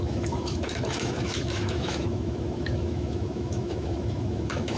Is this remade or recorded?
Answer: remade